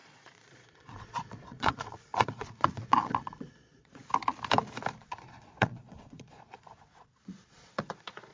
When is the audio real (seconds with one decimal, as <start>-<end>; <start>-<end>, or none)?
4.0-5.0